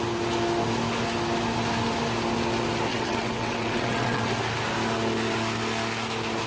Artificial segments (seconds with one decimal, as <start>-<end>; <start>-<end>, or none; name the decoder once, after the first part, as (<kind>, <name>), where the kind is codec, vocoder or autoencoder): 2.9-4.4 (vocoder, WaveNeXt)